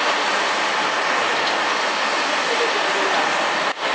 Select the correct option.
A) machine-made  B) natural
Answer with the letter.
B